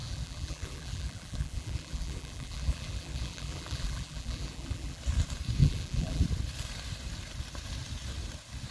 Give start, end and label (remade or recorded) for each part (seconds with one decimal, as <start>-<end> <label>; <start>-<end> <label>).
0.0-5.0 remade; 5.0-5.6 recorded; 5.6-6.2 remade; 6.2-8.7 recorded

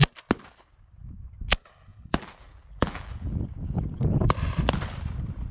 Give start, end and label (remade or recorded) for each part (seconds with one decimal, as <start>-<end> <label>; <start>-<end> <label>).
0.0-1.9 recorded; 1.9-3.4 remade; 3.4-5.5 recorded

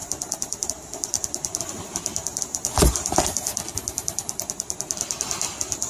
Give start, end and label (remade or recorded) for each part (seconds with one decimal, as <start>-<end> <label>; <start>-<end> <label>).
0.0-2.4 remade; 2.4-4.2 recorded; 4.2-5.1 remade; 5.1-5.9 recorded

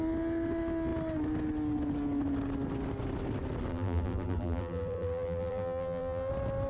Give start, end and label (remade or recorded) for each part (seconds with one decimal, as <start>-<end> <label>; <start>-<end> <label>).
0.0-3.7 recorded; 3.7-6.3 remade; 6.3-6.7 recorded

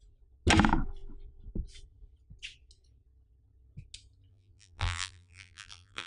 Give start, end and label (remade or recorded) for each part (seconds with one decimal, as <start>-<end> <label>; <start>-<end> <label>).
0.0-4.3 recorded; 4.3-6.1 remade

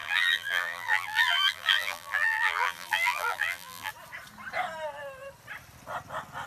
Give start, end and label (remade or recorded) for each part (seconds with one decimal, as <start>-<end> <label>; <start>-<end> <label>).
0.0-3.9 remade; 3.9-6.5 recorded

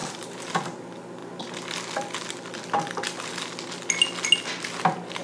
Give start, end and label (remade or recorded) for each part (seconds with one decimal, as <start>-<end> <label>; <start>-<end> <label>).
0.0-0.5 remade; 0.5-5.2 recorded